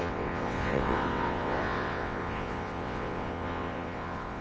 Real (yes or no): no